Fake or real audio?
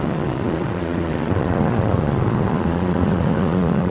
fake